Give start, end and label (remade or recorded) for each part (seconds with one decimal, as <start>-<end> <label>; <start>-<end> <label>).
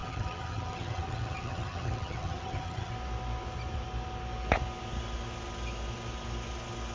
0.0-2.9 remade; 2.9-6.9 recorded